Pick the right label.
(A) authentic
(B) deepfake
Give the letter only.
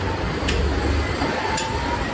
A